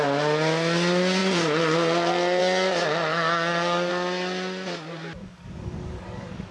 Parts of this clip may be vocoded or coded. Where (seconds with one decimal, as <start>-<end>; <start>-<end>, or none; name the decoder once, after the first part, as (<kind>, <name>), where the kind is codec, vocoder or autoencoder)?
3.1-3.9 (codec, DAC); 5.2-6.5